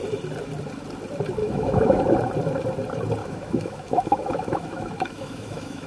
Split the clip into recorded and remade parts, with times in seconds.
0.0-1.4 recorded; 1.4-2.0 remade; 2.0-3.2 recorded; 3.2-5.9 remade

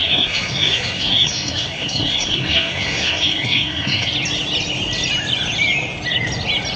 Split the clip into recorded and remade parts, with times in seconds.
0.0-4.1 remade; 4.1-6.8 recorded

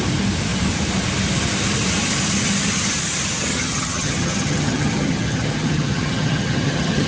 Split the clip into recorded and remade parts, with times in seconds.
0.0-3.5 recorded; 3.5-7.1 remade

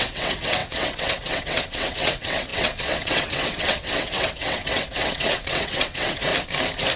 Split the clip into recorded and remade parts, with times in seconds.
0.0-6.3 remade; 6.3-7.0 recorded

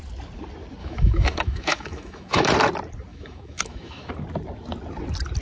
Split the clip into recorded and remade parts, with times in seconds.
0.0-0.8 recorded; 0.8-2.5 remade; 2.5-3.1 recorded; 3.1-4.1 remade; 4.1-5.4 recorded